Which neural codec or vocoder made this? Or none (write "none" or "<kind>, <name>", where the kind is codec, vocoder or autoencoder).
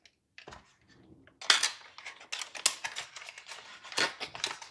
none